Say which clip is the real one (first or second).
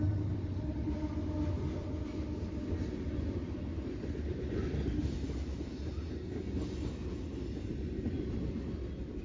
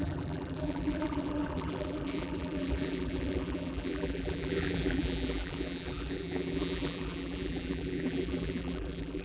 first